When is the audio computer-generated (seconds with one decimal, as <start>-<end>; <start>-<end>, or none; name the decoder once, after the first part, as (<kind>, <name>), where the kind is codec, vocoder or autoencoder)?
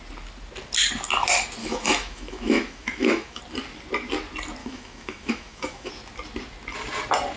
1.6-3.4 (autoencoder, DAC-VAE); 4.6-5.9